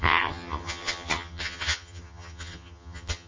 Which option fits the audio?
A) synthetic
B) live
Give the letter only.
A